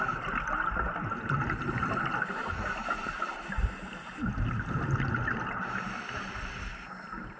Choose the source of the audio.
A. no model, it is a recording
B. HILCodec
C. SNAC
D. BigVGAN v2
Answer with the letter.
A